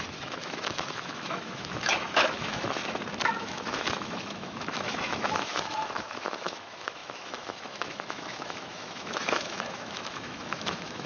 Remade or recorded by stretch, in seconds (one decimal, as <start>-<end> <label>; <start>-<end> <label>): 0.0-2.8 remade; 2.8-3.4 recorded; 3.4-11.1 remade